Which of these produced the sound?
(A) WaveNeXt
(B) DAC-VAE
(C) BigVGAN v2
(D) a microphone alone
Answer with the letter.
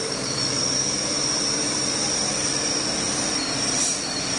C